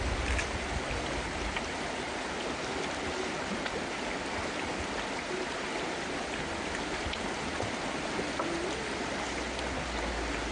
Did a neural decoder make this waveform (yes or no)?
no